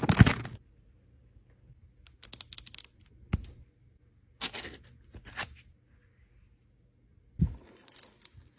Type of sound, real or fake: real